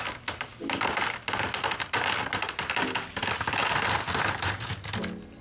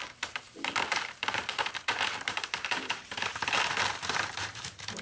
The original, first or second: first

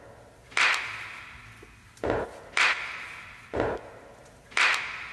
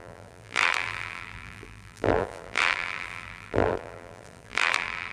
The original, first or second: first